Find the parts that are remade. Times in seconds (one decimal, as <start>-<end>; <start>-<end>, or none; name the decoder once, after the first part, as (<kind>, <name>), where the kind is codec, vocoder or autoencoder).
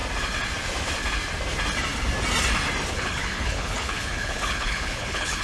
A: 2.9-5.4 (codec, HILCodec)